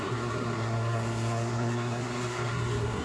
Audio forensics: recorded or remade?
remade